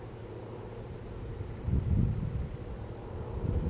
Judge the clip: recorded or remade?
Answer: recorded